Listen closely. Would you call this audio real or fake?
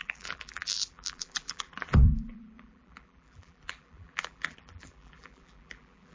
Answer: fake